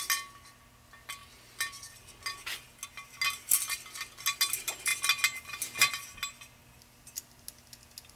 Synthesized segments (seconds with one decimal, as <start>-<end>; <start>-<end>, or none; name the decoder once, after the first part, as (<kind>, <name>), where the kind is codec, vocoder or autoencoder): none